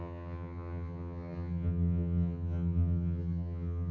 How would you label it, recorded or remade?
remade